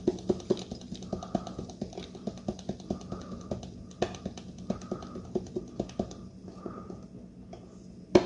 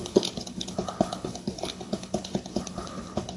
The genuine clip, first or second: first